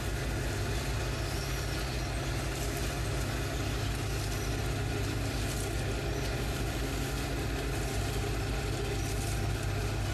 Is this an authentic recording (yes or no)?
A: yes